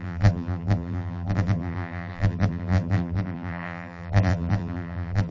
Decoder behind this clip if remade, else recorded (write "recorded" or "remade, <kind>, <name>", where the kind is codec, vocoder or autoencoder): remade, vocoder, BigVGAN v2